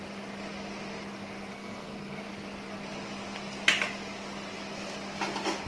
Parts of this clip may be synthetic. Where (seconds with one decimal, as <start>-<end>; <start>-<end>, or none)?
1.5-2.2